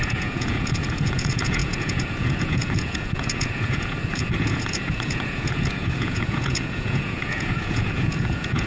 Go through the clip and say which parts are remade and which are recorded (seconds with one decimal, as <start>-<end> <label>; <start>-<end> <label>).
0.0-8.7 remade